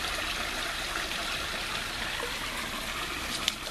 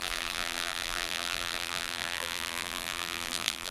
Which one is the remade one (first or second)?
second